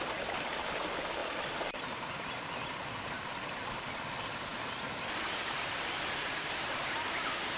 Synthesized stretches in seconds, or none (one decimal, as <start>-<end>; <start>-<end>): none

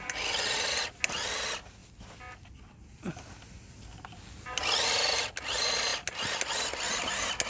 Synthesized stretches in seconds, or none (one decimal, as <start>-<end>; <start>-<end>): none

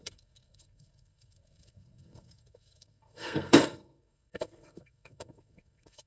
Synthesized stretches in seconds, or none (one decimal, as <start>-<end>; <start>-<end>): 0.0-6.1

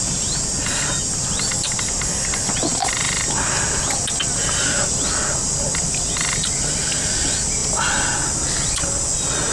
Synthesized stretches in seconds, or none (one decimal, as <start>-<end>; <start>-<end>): none

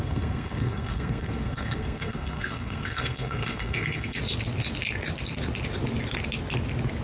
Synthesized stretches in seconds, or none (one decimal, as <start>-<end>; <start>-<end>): 0.0-4.2

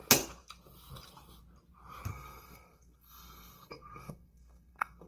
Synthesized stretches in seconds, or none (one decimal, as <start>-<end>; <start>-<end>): 2.1-5.1